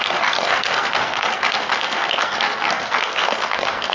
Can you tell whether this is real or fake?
fake